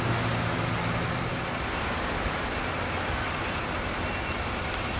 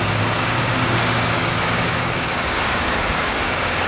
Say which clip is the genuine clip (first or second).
first